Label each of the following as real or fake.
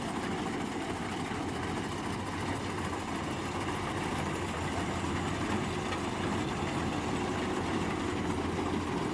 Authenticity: real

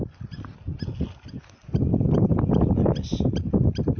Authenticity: real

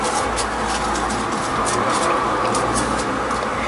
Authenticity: real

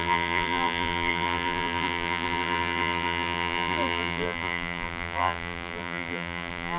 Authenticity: fake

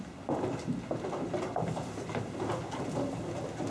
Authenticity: real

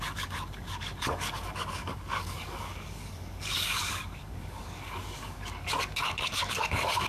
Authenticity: fake